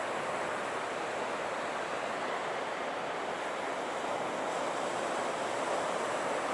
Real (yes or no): yes